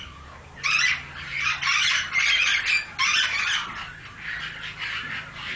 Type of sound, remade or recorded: recorded